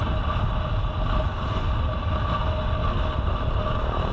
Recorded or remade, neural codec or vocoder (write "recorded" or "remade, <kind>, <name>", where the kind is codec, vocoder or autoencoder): recorded